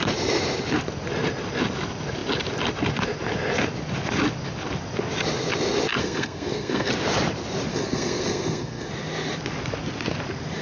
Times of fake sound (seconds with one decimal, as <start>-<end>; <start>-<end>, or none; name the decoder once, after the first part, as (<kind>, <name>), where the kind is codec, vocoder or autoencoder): 6.0-6.9 (codec, SNAC); 7.7-8.9